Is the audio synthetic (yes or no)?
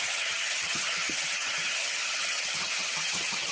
yes